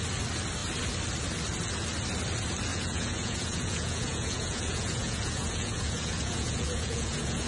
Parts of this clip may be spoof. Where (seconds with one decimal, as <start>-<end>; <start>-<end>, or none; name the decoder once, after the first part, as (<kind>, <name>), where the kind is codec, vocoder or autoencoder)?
2.7-7.5 (vocoder, Vocos)